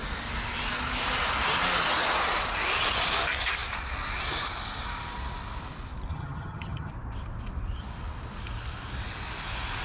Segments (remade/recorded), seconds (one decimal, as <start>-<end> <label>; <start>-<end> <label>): 0.0-6.1 recorded; 6.1-6.9 remade; 6.9-9.8 recorded